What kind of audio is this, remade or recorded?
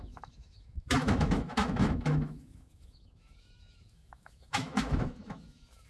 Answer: remade